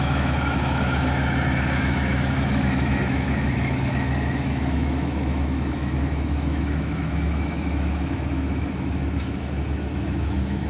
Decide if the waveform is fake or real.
fake